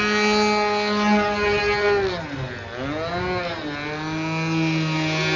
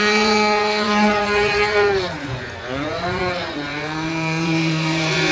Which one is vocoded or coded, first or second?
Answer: second